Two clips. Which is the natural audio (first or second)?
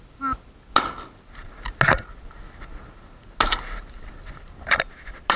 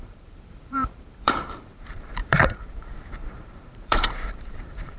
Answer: first